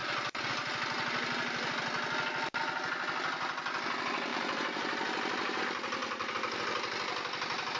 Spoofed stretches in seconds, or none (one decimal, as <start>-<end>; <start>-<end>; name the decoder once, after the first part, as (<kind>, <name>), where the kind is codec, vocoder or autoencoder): 4.3-5.6 (vocoder, BigVGAN v2)

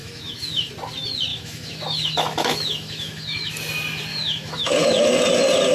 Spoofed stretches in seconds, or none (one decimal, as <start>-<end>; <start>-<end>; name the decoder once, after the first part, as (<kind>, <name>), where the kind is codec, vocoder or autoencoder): 0.0-0.7 (autoencoder, DAC-VAE); 1.3-3.5; 4.1-5.0